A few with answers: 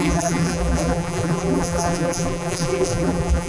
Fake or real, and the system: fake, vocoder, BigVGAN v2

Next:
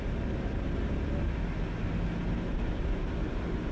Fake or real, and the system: real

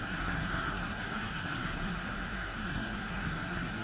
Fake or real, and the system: fake, codec, SNAC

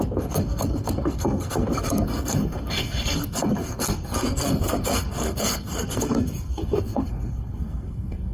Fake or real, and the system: fake, codec, SNAC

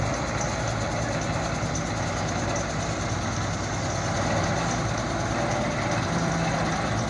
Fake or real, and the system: real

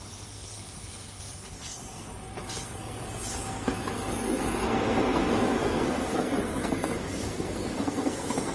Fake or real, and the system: fake, codec, SNAC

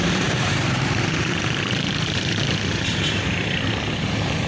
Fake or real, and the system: fake, vocoder, BigVGAN v2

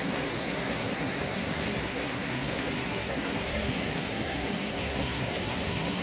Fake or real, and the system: fake, codec, SNAC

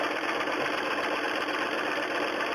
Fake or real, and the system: real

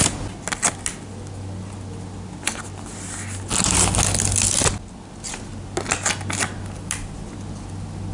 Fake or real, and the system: real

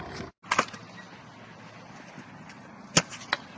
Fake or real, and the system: real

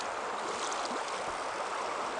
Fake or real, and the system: real